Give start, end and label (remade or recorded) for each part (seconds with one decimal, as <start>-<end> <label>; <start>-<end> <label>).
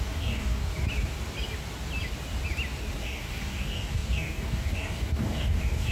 0.0-0.7 remade; 0.7-3.0 recorded; 3.0-5.9 remade